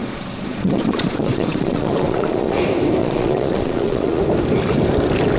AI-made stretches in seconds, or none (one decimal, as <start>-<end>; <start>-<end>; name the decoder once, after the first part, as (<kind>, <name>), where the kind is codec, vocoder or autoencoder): 0.0-2.6 (vocoder, Vocos); 3.0-4.2